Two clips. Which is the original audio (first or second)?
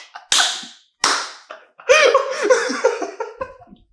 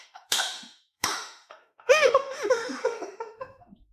first